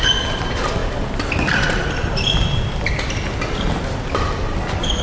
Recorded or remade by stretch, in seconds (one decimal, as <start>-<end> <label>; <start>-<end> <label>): 0.0-5.0 recorded

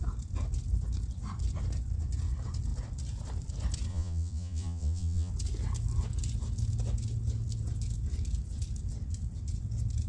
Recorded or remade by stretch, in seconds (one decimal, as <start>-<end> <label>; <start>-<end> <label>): 0.0-3.9 recorded; 3.9-5.3 remade; 5.3-10.1 recorded

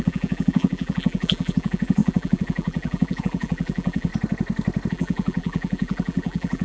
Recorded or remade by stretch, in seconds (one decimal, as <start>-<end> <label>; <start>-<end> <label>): 0.0-4.1 remade; 4.1-4.9 recorded; 4.9-6.6 remade

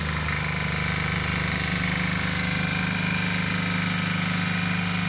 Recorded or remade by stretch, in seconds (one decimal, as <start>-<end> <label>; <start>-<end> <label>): 0.0-5.1 recorded